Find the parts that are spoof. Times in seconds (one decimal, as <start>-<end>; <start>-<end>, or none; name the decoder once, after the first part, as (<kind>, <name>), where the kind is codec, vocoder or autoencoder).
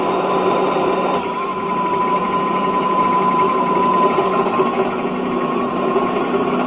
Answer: 2.2-6.2 (vocoder, Vocos)